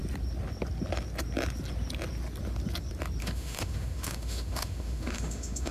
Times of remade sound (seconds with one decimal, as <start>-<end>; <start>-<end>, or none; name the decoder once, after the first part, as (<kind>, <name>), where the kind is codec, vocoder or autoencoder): 3.2-5.7 (autoencoder, DAC-VAE)

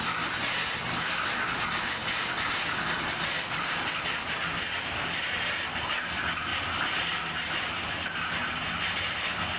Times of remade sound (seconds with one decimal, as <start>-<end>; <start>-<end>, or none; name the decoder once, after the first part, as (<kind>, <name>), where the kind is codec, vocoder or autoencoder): none

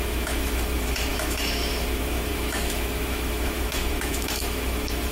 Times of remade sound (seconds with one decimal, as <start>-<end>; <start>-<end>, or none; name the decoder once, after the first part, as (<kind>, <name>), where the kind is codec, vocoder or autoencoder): 0.0-5.1 (autoencoder, DAC-VAE)

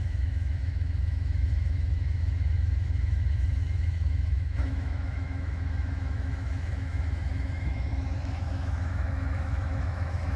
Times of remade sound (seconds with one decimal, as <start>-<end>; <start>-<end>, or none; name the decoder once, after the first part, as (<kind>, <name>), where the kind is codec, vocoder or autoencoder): 0.0-10.4 (autoencoder, DAC-VAE)

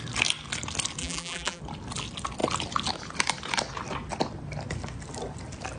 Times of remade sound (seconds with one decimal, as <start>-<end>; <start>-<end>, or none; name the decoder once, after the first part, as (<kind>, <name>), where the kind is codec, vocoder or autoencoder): 1.0-1.6 (vocoder, BigVGAN v2)

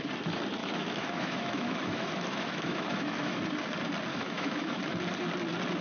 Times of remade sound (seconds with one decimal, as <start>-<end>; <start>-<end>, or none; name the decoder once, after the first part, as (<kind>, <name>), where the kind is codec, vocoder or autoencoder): 0.6-3.4 (autoencoder, DAC-VAE); 4.1-4.8